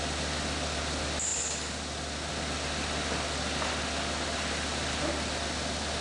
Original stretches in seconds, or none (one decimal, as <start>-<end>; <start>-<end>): 0.0-6.0